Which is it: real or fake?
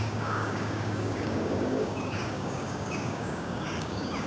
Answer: fake